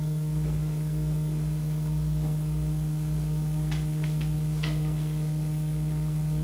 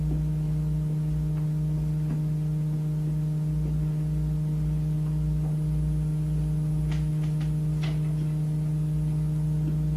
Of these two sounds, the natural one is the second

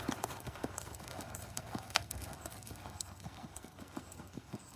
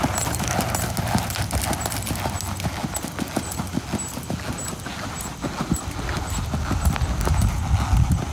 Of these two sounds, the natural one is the second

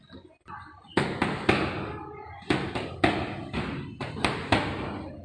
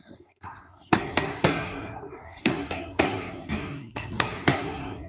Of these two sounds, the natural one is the first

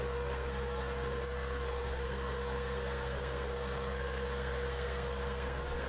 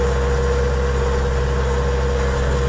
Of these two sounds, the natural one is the second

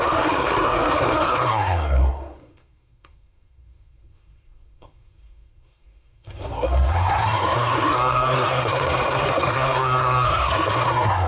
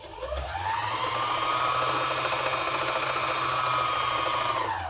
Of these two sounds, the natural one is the second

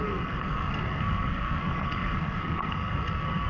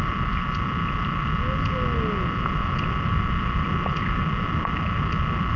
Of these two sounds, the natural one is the second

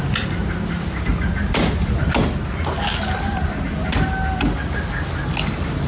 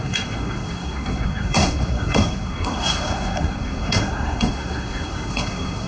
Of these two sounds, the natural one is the first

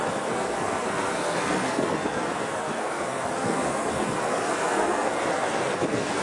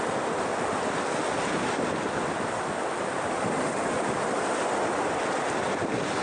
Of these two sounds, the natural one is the second